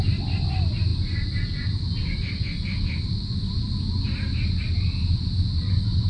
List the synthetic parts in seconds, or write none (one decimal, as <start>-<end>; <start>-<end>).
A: none